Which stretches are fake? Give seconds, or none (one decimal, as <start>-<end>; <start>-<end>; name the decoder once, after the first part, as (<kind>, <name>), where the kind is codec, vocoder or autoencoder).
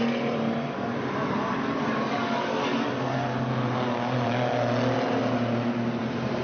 0.0-2.2 (vocoder, BigVGAN v2); 6.0-6.4